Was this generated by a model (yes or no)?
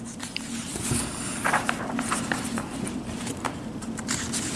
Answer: yes